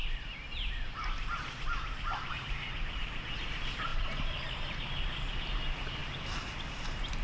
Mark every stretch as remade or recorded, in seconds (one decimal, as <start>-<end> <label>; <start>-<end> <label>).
0.0-2.3 remade; 2.3-3.9 recorded; 3.9-5.3 remade; 5.3-6.0 recorded; 6.0-7.2 remade